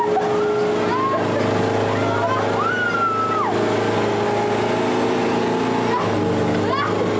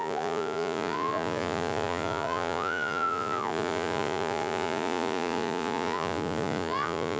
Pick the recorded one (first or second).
first